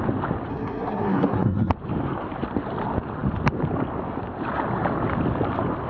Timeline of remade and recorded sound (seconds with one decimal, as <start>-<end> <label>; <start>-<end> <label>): 0.0-0.5 recorded; 0.5-1.7 remade; 1.7-5.9 recorded